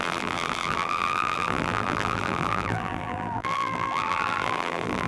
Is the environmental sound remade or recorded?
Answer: remade